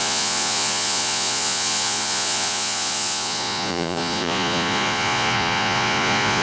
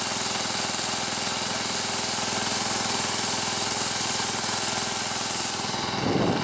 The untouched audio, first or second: second